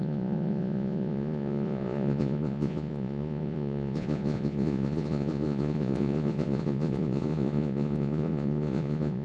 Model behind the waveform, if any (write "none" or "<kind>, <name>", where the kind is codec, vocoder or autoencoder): vocoder, Vocos